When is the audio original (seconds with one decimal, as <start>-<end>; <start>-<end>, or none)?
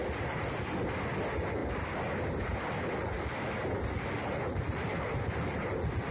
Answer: 0.0-6.1